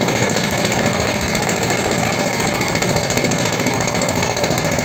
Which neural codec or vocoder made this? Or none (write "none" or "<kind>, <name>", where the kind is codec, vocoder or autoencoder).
codec, DAC